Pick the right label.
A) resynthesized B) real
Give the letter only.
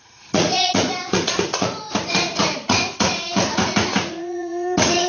A